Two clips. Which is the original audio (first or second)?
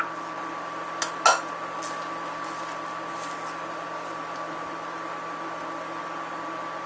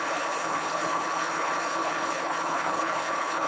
first